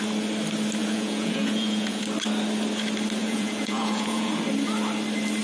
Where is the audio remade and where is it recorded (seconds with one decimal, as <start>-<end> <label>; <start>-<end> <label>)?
0.0-0.8 recorded; 0.8-2.0 remade; 2.0-3.2 recorded; 3.2-4.4 remade; 4.4-5.4 recorded